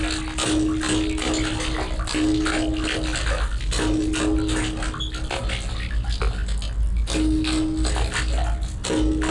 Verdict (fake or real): real